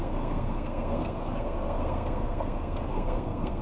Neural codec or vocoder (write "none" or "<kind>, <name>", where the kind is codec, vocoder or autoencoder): codec, SNAC